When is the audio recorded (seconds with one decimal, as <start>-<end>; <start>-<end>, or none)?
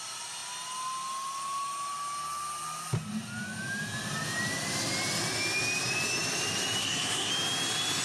0.0-6.8; 7.3-8.0